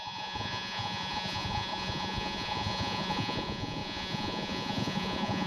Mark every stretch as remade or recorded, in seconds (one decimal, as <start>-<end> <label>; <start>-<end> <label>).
0.0-5.5 remade